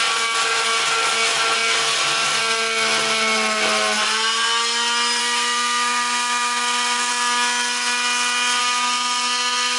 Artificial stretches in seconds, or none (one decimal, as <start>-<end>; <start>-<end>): 5.2-7.1; 8.6-9.8